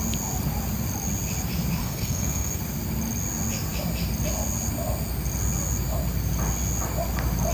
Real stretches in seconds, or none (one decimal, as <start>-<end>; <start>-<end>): 0.0-1.8; 2.6-7.5